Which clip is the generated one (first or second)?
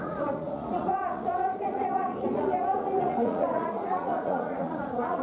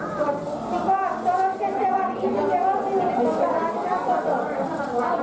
first